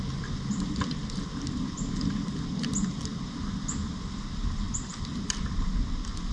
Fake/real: real